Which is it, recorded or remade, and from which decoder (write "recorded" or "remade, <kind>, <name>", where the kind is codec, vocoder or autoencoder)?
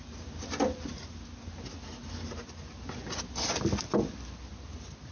recorded